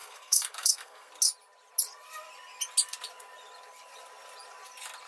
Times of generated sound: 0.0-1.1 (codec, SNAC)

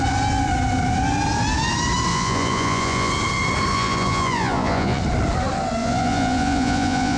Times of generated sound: 2.1-3.1 (vocoder, Vocos); 3.7-5.0; 5.8-7.2

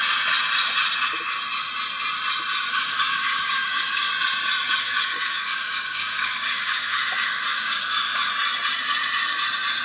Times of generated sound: 2.7-4.1 (codec, DAC); 4.8-8.3